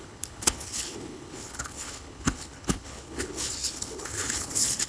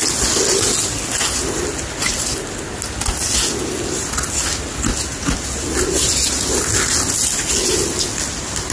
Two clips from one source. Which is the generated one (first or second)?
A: first